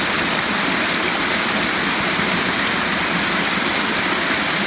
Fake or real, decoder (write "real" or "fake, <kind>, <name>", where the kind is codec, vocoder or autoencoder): real